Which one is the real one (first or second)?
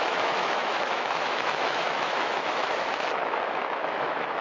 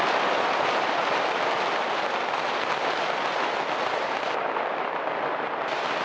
second